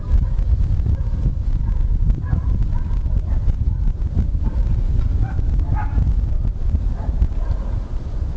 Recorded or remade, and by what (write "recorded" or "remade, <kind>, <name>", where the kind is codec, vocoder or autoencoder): recorded